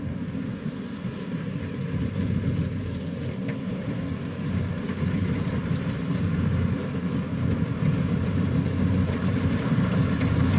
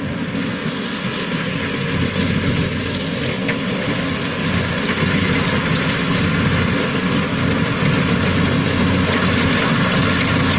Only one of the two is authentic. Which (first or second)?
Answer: second